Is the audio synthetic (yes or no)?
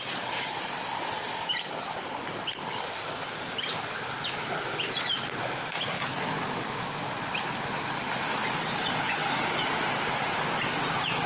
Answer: no